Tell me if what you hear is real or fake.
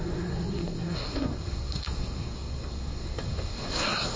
fake